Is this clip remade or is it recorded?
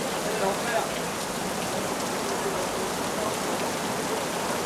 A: recorded